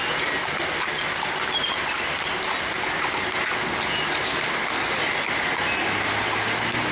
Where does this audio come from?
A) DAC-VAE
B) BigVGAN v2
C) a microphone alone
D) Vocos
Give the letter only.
C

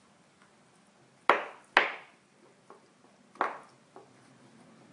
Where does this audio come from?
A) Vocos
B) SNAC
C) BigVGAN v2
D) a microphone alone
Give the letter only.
D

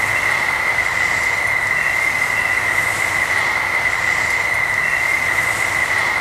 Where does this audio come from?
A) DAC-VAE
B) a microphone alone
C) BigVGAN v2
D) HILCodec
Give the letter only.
B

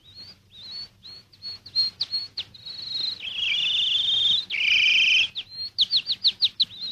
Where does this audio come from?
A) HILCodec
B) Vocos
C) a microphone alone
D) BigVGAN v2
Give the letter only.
C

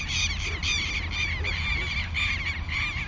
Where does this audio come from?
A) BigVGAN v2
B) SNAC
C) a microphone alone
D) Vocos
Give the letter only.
C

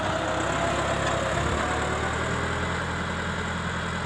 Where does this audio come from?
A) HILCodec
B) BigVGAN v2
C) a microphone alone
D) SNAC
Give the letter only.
C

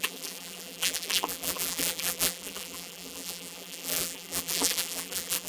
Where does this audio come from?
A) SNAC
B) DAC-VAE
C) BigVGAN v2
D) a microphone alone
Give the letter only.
C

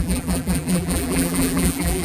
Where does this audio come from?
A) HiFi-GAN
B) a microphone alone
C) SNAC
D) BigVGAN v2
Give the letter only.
D